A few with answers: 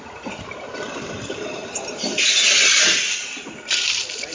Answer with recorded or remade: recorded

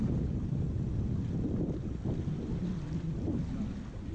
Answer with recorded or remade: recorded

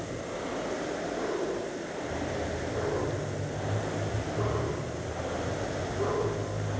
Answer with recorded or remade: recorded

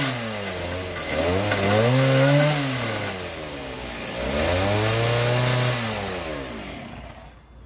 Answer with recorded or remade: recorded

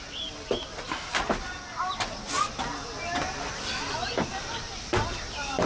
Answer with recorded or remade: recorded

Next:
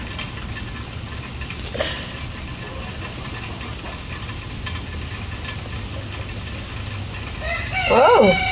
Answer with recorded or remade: recorded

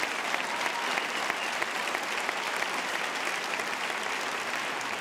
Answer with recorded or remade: recorded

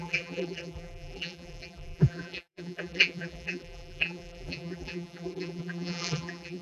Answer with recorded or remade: remade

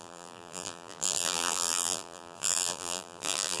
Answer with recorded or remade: remade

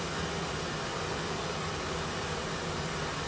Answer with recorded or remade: recorded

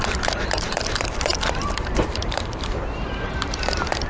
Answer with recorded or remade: remade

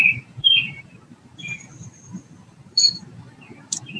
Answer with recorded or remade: remade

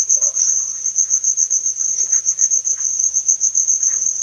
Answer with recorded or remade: remade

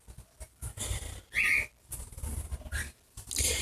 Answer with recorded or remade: recorded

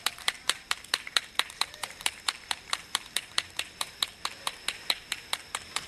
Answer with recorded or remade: remade